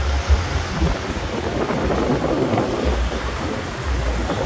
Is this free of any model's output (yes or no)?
yes